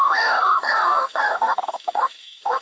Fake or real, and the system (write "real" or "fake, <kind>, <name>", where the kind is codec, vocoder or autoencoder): fake, codec, DAC